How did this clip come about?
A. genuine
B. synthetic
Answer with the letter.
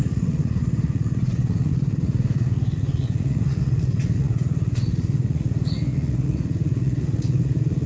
B